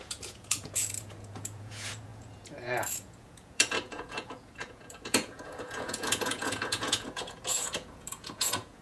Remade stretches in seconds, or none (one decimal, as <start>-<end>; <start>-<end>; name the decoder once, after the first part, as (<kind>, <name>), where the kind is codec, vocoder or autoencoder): 0.0-8.8 (vocoder, Vocos)